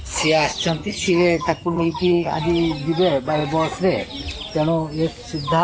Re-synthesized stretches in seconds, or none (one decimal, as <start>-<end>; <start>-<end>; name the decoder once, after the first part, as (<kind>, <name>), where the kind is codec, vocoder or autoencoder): 0.8-2.4 (vocoder, HiFi-GAN)